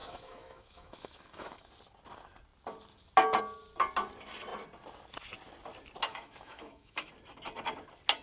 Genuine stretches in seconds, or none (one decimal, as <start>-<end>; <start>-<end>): 1.7-6.1; 7.1-8.2

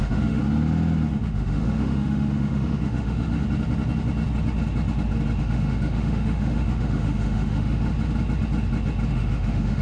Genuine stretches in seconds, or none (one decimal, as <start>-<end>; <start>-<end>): 0.4-1.2; 3.4-5.4; 7.9-9.1